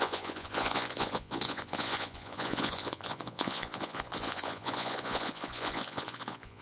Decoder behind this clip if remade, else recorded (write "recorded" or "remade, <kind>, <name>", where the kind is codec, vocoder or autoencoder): remade, vocoder, Vocos